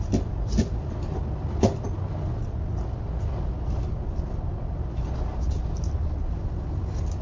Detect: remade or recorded recorded